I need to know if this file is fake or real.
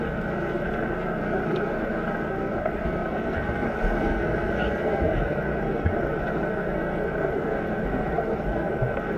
fake